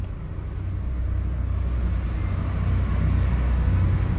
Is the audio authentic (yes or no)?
yes